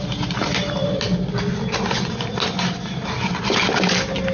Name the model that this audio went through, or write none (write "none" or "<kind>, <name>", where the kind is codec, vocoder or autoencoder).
none